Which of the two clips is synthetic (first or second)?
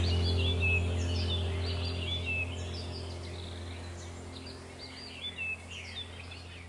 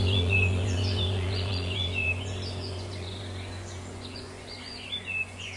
second